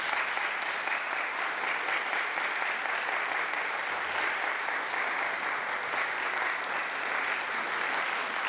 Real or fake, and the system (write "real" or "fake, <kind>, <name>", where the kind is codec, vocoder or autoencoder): real